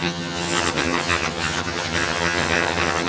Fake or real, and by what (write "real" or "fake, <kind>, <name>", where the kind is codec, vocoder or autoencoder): fake, vocoder, HiFi-GAN